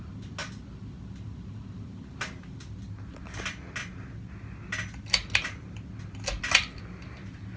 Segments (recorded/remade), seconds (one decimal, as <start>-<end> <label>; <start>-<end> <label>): 0.0-7.6 recorded